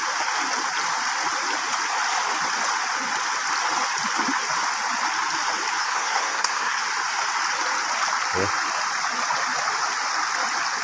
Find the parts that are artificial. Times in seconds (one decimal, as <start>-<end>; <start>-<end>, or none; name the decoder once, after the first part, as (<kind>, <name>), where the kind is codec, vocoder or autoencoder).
5.8-6.8 (codec, SNAC)